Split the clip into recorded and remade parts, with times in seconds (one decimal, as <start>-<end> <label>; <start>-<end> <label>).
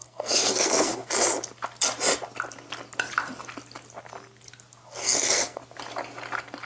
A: 0.0-1.1 remade; 1.1-5.0 recorded; 5.0-5.6 remade; 5.6-6.7 recorded